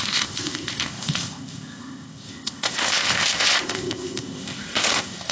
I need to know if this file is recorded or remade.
remade